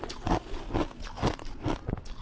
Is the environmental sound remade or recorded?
recorded